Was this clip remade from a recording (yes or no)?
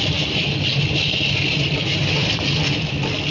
no